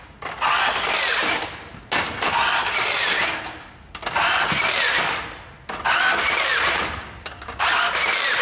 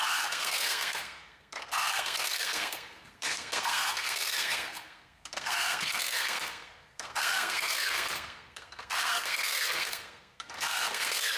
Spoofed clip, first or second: second